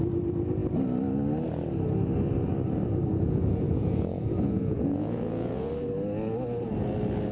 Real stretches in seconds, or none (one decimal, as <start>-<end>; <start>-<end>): 0.0-3.1; 5.7-7.3